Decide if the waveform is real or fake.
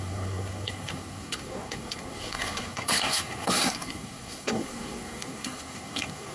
fake